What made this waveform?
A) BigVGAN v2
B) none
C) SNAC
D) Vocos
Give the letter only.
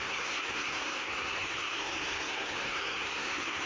C